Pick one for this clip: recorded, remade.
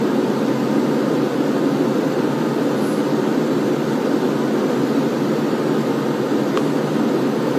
recorded